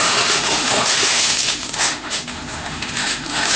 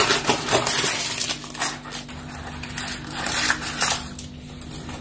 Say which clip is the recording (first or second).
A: second